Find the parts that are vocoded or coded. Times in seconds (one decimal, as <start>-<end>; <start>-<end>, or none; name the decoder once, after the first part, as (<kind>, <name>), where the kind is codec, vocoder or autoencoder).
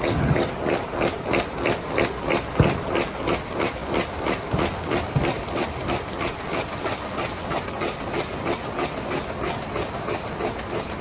3.8-7.6 (vocoder, BigVGAN v2)